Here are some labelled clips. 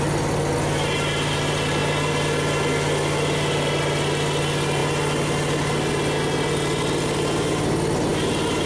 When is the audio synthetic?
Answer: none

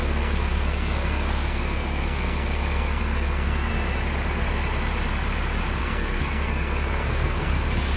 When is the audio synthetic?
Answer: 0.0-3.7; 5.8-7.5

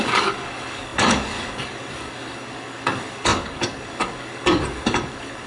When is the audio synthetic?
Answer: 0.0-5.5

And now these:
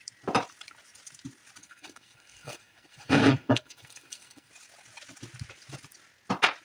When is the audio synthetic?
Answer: 1.6-4.5

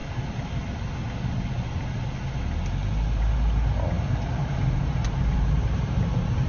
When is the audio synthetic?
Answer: 3.9-6.5

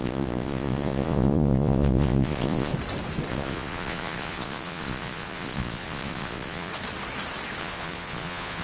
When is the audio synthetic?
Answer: 0.0-2.7; 3.3-6.7; 7.6-8.6

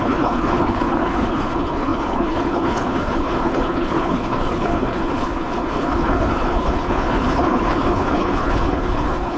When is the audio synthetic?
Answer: 0.0-9.4

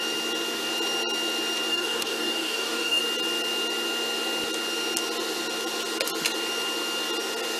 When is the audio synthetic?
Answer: 1.7-3.0